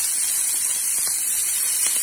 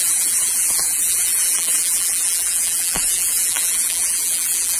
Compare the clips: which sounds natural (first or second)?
first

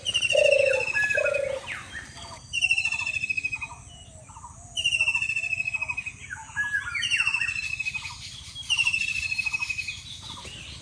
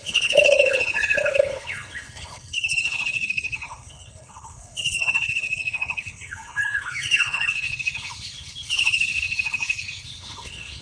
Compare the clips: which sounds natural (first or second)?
first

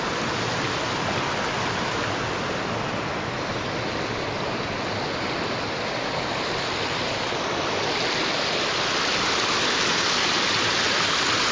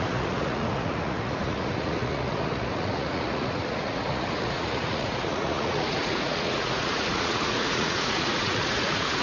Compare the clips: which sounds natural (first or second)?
first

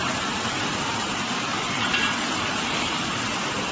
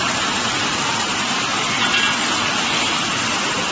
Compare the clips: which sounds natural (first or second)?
second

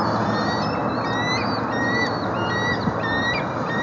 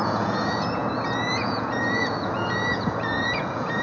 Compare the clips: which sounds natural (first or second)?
first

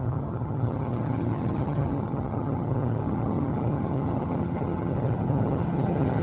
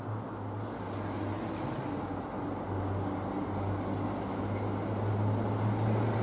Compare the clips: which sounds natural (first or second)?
second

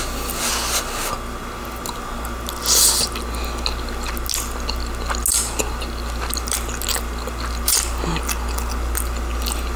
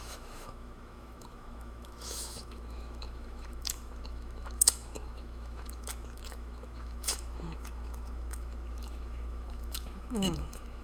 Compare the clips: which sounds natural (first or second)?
first